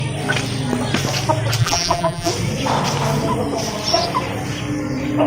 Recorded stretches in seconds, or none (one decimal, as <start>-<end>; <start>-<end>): 0.0-1.6; 2.3-5.3